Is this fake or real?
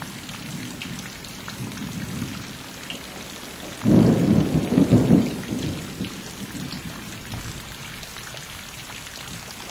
real